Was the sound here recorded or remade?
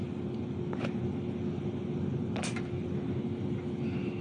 recorded